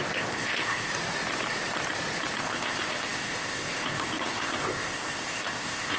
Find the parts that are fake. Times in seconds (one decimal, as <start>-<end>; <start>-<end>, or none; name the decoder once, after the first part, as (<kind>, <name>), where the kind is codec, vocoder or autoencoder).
0.0-0.9 (codec, ZipCodec); 2.4-6.0